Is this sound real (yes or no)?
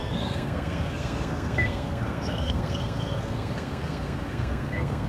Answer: no